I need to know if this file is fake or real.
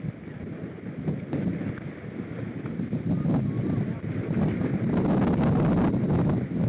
real